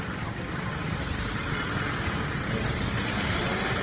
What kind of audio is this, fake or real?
real